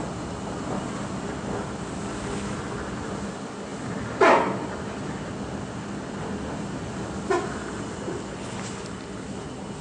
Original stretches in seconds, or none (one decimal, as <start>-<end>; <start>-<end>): 0.0-9.8

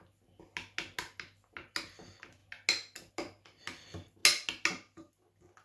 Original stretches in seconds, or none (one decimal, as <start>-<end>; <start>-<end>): 0.0-5.6

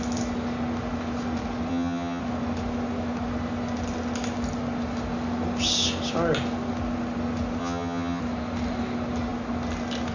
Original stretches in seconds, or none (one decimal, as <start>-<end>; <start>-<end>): 0.0-1.7; 2.2-7.6; 8.2-10.1

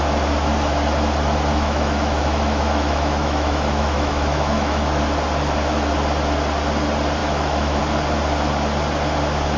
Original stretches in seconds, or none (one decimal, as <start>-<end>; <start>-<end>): 0.0-1.5; 5.0-7.2; 7.8-9.6

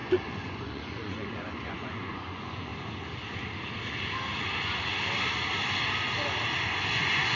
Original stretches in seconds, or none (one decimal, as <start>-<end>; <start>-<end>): 2.7-6.9

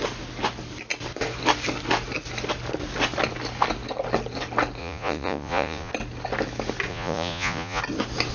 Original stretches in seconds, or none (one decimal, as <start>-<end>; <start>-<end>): 0.0-4.8; 5.9-6.9; 7.8-8.3